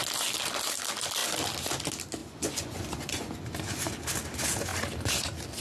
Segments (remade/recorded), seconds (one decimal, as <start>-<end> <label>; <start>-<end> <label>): 0.0-2.2 recorded; 2.2-3.3 remade; 3.3-5.6 recorded